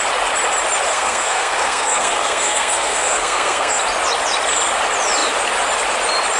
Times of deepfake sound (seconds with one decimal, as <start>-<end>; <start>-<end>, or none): 0.9-3.8

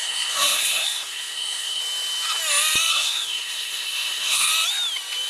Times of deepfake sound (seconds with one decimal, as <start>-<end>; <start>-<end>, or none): 0.0-1.8; 2.9-4.5

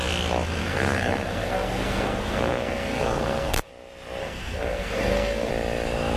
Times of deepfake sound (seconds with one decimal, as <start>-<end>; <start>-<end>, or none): 0.6-3.7; 4.2-5.5

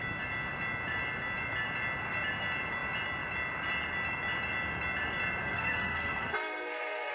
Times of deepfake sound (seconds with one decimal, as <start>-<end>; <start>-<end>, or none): 5.4-7.1